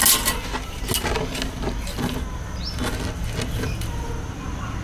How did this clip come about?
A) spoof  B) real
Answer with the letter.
B